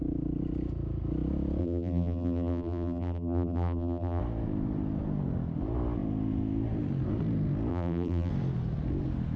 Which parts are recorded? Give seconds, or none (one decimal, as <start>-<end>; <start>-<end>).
0.0-1.6; 4.2-7.7; 8.3-9.4